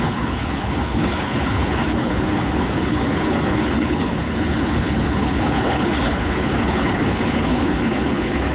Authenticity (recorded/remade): remade